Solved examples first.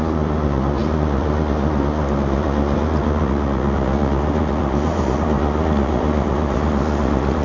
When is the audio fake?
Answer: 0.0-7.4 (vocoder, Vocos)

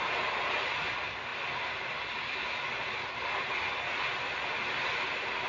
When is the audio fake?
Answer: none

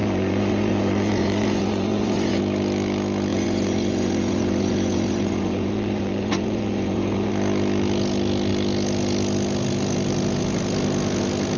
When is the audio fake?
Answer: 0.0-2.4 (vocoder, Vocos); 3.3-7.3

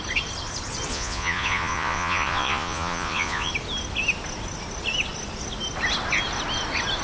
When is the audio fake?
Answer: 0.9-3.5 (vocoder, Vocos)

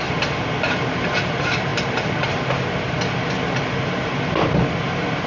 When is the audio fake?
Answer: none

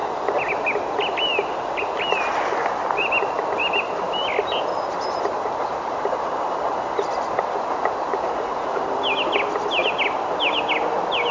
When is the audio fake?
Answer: 8.1-8.8 (vocoder, Vocos)

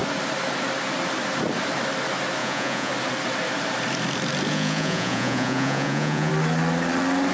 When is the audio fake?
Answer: 2.4-2.9 (vocoder, Vocos); 4.5-6.3

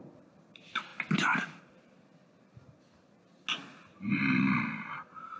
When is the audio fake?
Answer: none